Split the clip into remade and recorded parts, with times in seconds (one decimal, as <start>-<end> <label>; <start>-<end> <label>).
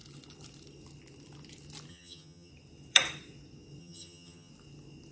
0.0-1.9 recorded; 1.9-2.5 remade; 2.5-3.8 recorded; 3.8-4.5 remade; 4.5-5.1 recorded